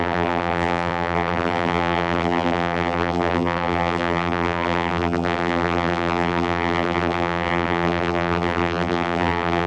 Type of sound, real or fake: fake